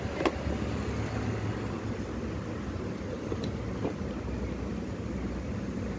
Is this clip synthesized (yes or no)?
no